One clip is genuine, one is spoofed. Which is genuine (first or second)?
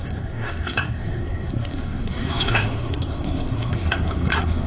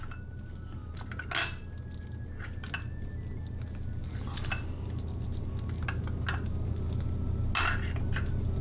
second